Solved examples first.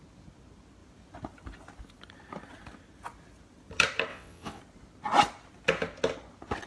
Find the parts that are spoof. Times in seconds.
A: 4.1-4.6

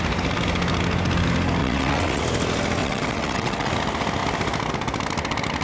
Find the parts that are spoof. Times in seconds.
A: 1.6-2.2; 2.8-3.7